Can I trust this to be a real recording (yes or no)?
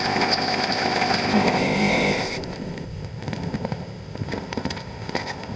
no